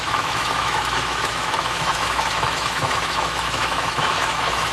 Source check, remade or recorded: remade